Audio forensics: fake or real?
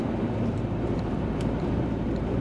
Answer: fake